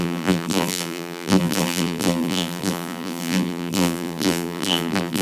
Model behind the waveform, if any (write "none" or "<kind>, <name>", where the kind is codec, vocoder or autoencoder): vocoder, BigVGAN v2